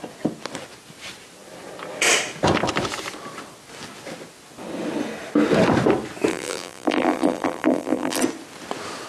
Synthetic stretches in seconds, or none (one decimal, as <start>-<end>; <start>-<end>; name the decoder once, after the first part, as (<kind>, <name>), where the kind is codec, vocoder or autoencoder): 6.3-8.2 (vocoder, BigVGAN v2)